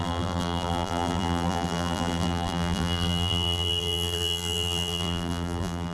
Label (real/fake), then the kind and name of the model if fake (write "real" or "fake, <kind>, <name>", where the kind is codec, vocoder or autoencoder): fake, vocoder, BigVGAN v2